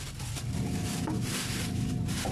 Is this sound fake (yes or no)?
no